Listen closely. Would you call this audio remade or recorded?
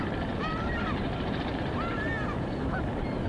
remade